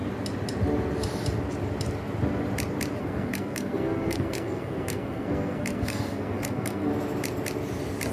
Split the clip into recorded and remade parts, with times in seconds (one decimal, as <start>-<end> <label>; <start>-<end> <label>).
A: 0.0-3.0 recorded; 3.0-6.9 remade; 6.9-8.1 recorded